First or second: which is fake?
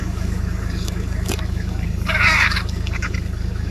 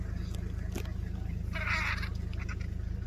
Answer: first